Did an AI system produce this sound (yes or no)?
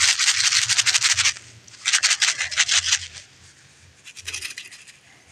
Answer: no